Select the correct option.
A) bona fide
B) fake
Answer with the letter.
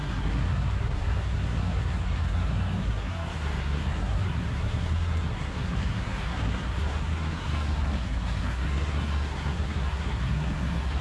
B